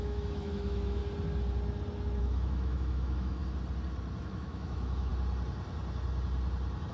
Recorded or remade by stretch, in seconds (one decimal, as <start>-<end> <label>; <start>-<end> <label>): 0.0-1.0 remade; 1.0-2.2 recorded; 2.2-3.4 remade; 3.4-4.2 recorded; 4.2-5.1 remade; 5.1-6.9 recorded